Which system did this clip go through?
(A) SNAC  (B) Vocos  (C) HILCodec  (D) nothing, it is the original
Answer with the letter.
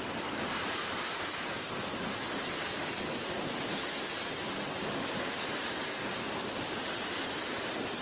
D